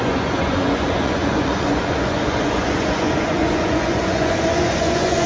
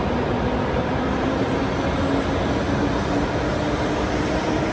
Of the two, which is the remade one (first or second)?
first